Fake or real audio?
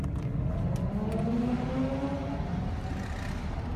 real